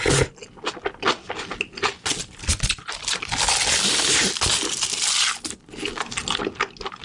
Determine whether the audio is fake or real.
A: real